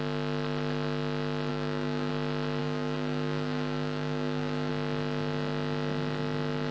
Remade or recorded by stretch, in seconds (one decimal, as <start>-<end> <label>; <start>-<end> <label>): 0.0-1.5 recorded; 1.5-2.1 remade; 2.1-2.6 recorded; 2.6-4.7 remade; 4.7-6.7 recorded